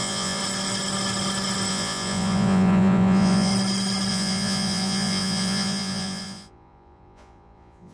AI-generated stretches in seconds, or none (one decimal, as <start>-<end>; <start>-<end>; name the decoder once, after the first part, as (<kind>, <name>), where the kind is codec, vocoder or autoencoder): 0.0-0.4 (vocoder, Vocos); 1.7-3.5; 4.1-7.9